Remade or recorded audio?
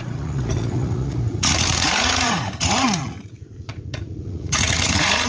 remade